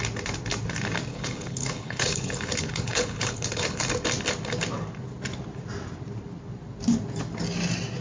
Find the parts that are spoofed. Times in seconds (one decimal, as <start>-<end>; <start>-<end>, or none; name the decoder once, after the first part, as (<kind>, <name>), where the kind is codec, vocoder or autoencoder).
1.1-3.8 (codec, HILCodec)